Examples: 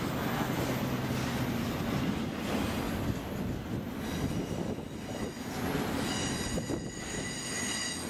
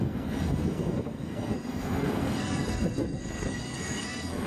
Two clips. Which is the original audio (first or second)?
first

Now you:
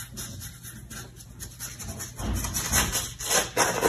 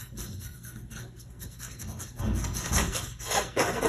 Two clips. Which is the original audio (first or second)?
first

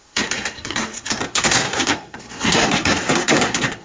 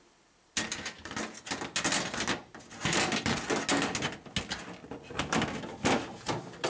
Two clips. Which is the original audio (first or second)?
second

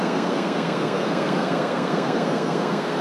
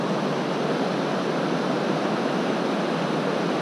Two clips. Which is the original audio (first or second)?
second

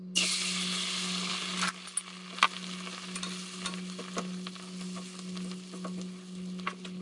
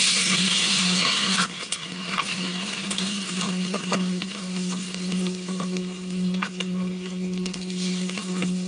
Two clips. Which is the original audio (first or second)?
first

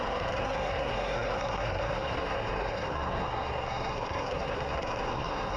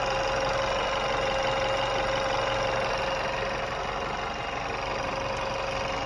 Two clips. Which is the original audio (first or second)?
second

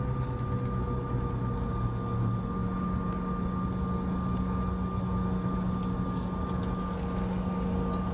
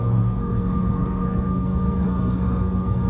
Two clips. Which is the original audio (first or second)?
first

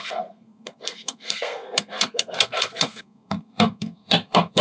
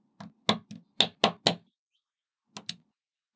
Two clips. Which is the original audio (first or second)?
second